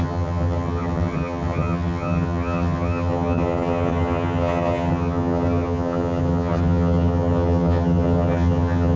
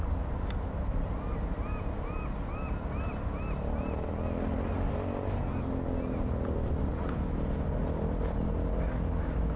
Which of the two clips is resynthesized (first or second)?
first